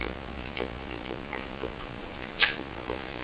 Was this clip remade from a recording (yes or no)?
yes